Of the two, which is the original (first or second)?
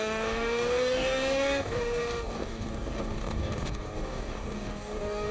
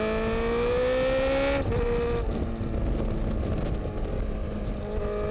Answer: second